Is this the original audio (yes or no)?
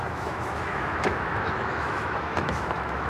no